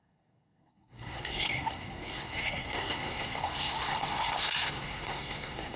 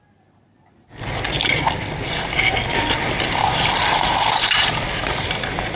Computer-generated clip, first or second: first